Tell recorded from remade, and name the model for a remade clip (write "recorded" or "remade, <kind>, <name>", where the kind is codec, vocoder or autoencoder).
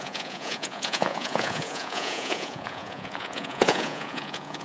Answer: remade, vocoder, Vocos